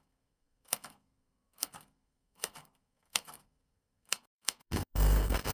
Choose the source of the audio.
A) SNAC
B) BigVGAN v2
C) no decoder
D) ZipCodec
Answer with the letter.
A